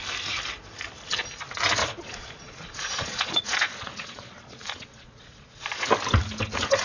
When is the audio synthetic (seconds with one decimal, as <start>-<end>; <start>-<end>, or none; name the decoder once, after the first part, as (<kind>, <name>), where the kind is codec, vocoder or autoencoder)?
1.8-5.9 (vocoder, Vocos)